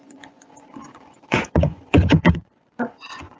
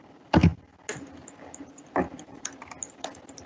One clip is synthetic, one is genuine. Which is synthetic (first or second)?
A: first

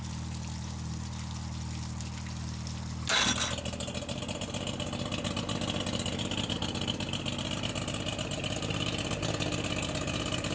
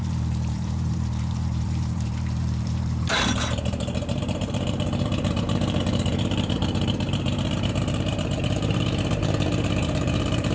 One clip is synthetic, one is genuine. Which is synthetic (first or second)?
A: second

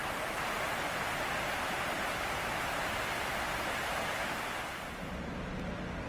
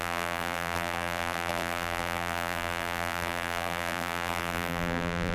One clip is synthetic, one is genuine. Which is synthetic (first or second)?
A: second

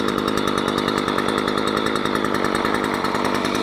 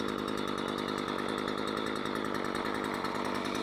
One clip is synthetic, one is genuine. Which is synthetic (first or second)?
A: first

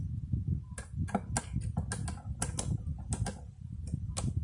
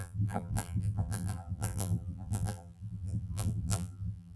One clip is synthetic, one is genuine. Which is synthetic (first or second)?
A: second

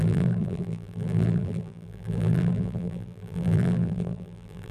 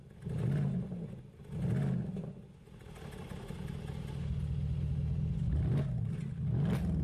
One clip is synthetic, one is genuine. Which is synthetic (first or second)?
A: first